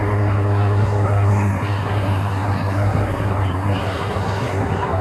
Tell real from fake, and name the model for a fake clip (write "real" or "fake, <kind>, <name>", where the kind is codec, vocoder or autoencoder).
fake, codec, SNAC